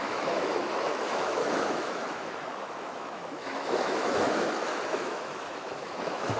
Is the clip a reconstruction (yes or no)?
yes